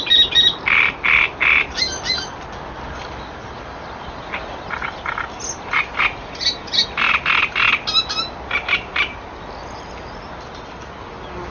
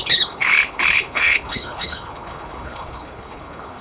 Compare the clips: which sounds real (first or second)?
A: first